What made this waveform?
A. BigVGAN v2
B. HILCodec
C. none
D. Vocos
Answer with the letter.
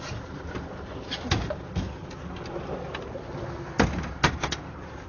C